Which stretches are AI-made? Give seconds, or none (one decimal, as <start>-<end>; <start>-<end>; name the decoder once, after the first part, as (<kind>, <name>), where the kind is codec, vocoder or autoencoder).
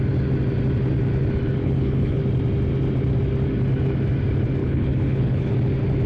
1.6-2.2 (codec, HILCodec); 4.6-5.5